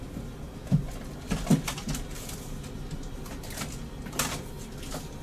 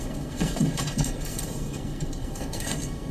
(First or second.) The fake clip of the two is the second